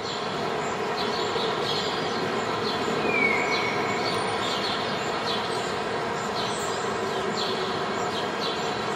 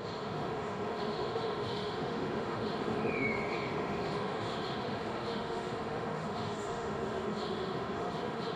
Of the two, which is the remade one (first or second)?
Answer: second